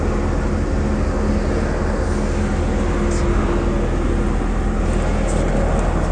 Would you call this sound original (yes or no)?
yes